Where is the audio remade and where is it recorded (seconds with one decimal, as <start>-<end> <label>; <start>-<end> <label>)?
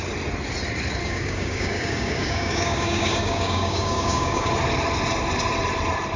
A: 0.0-1.0 recorded; 1.0-4.5 remade; 4.5-6.2 recorded